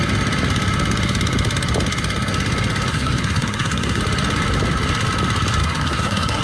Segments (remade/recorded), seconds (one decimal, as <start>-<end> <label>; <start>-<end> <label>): 0.0-2.9 recorded; 2.9-4.0 remade; 4.0-5.6 recorded; 5.6-6.4 remade